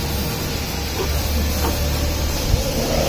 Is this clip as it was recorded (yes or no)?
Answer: yes